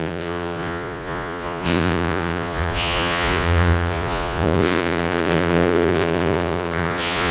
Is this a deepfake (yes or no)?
yes